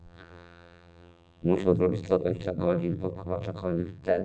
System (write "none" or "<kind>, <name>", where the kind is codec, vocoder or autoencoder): vocoder, BigVGAN v2